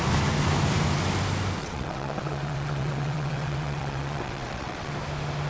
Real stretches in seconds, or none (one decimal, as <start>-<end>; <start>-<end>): 0.0-1.6; 4.9-5.5

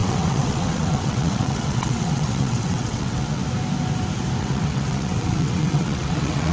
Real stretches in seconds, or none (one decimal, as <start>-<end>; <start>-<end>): 3.4-4.4

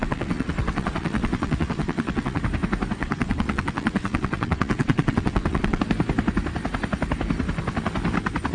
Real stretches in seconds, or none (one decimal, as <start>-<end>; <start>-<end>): 2.4-3.0; 5.8-8.5